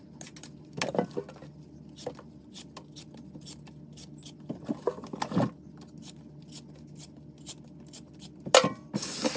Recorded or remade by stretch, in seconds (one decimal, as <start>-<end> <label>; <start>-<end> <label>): 0.0-9.4 recorded